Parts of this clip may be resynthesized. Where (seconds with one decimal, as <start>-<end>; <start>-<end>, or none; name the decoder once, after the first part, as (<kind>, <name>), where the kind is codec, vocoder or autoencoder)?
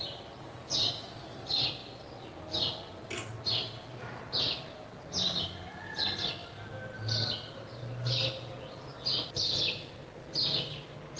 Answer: none